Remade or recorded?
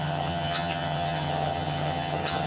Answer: remade